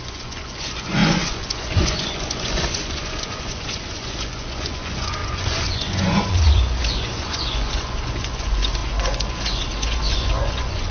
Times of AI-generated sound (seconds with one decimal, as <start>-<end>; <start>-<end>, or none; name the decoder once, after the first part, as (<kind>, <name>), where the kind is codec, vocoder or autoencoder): 0.0-10.9 (vocoder, Vocos)